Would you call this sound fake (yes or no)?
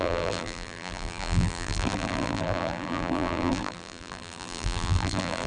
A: yes